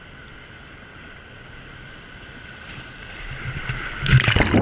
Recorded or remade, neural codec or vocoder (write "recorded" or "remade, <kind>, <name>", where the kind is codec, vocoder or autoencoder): recorded